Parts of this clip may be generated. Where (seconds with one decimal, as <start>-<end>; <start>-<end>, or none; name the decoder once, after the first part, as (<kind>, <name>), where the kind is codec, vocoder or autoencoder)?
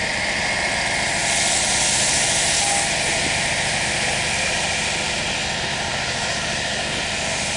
5.7-7.0 (codec, DAC)